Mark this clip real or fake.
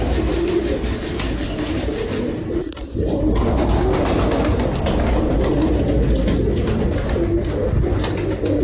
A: real